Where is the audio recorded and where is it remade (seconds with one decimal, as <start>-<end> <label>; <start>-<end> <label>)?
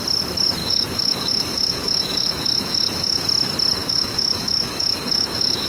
0.0-0.6 recorded; 0.6-3.2 remade; 3.2-3.8 recorded; 3.8-5.7 remade